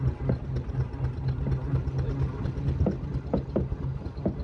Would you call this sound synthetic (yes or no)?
no